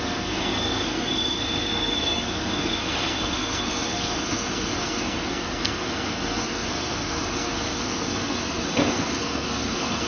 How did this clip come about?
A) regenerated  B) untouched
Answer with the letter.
A